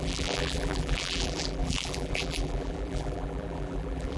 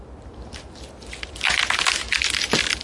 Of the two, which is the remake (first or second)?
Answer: first